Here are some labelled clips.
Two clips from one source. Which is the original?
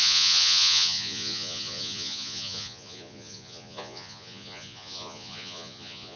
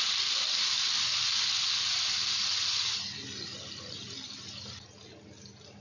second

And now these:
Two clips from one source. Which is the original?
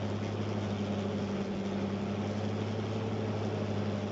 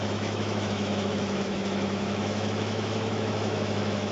first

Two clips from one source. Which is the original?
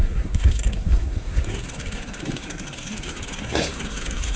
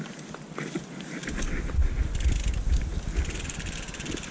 second